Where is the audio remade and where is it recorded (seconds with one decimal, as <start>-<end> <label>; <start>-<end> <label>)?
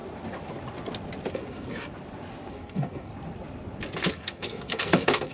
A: 0.0-1.3 recorded; 1.3-1.9 remade; 1.9-2.5 recorded; 2.5-3.1 remade; 3.1-4.1 recorded; 4.1-5.3 remade